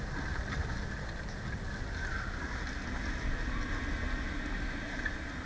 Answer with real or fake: real